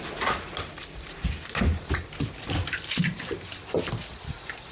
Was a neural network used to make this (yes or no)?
no